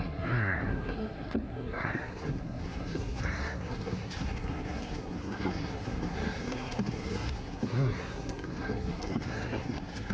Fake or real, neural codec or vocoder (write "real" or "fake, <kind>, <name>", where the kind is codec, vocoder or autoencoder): fake, codec, SNAC